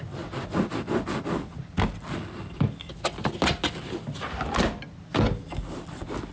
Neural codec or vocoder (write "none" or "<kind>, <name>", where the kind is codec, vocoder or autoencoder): none